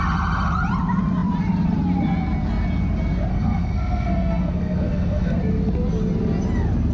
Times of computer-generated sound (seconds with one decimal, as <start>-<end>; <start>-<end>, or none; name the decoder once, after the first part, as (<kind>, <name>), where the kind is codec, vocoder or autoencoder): 3.3-5.4 (codec, SNAC)